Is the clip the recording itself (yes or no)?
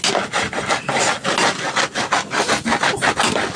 yes